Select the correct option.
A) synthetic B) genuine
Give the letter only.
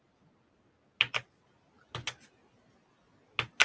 B